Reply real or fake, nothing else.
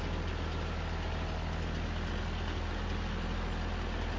real